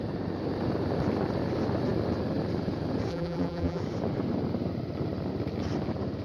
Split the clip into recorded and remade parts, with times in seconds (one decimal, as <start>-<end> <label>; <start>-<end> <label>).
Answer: 0.0-3.1 recorded; 3.1-3.8 remade; 3.8-6.2 recorded